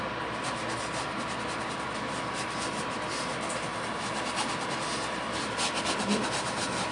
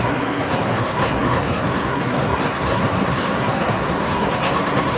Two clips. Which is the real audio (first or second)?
first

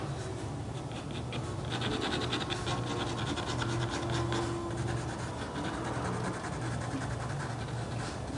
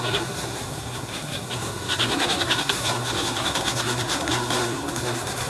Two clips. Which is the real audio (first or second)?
first